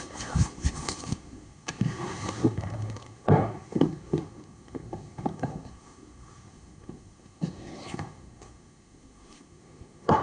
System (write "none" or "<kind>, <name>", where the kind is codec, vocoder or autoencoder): codec, SNAC